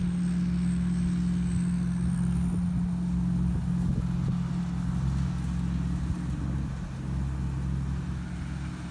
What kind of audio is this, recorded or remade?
recorded